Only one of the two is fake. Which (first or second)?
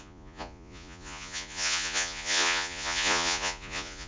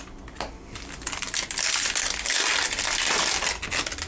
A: first